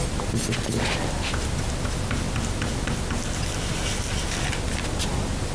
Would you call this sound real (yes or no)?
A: yes